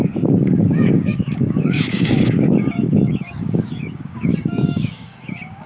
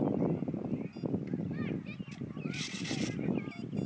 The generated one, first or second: first